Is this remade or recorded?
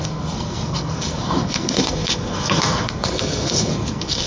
remade